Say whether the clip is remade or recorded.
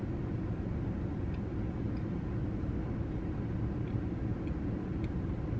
recorded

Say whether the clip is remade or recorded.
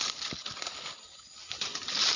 recorded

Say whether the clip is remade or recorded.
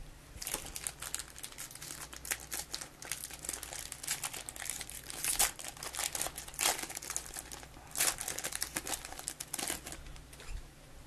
recorded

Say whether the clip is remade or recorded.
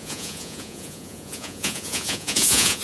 remade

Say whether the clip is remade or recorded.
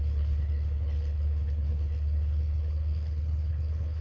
remade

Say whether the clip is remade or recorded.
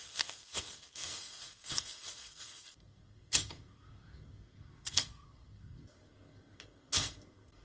remade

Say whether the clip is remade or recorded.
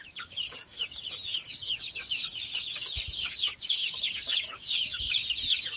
remade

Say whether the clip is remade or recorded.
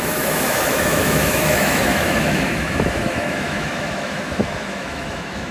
remade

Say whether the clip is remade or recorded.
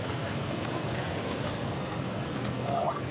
remade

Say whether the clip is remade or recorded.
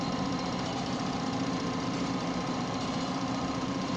remade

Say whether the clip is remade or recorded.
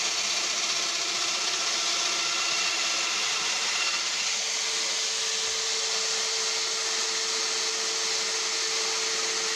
recorded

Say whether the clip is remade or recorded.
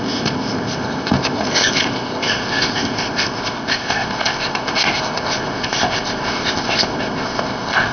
remade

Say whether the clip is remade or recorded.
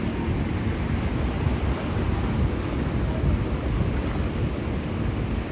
recorded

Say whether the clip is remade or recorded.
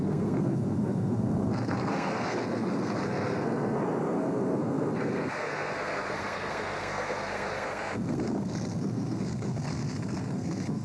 remade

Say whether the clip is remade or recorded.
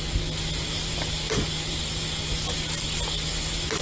recorded